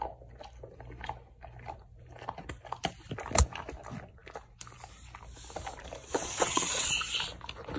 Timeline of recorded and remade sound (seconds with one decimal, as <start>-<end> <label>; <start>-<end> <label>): 0.0-6.0 recorded; 6.0-6.9 remade; 6.9-7.8 recorded